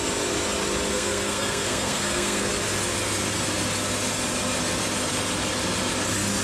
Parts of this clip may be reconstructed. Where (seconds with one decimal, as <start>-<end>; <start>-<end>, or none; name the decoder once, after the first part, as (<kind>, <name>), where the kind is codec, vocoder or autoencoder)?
0.9-2.5 (codec, SNAC)